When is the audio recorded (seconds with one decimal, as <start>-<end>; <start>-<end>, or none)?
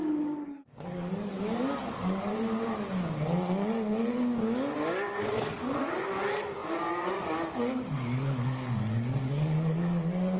2.3-5.2